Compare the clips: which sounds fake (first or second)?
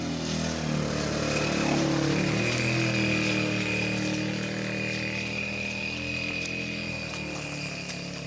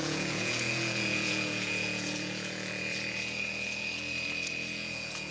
second